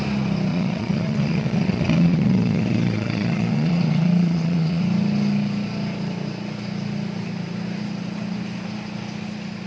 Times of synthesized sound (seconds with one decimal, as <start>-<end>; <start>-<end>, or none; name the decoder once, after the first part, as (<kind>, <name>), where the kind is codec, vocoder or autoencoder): 0.5-4.8 (vocoder, Vocos)